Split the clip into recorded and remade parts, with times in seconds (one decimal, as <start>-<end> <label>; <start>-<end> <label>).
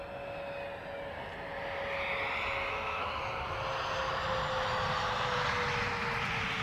0.0-2.7 recorded; 2.7-3.2 remade; 3.2-6.6 recorded